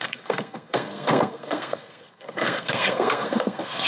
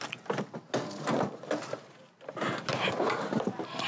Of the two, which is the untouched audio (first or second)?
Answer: second